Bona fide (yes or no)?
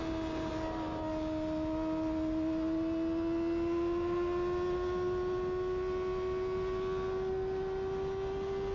yes